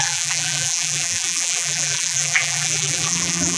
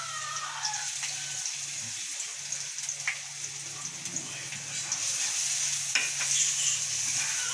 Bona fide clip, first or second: second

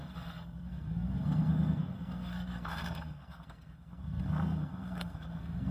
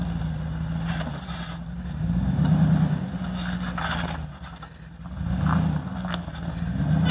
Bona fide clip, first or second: second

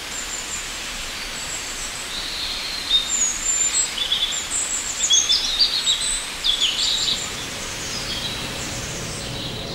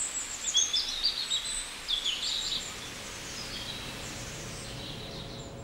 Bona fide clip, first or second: second